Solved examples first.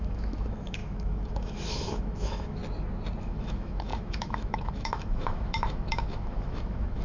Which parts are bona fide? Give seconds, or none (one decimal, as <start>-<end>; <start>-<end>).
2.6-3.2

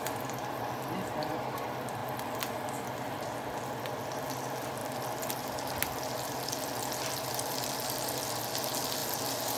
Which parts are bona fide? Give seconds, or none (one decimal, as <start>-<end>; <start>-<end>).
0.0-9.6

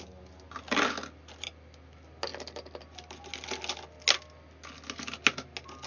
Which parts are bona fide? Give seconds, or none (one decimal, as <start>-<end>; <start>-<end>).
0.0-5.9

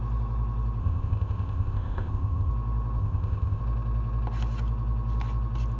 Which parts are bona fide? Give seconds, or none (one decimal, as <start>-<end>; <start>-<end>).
0.0-0.8; 2.5-3.0; 3.6-5.8

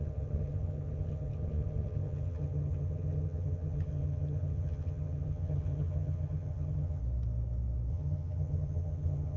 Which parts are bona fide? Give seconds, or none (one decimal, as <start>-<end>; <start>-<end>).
7.0-7.9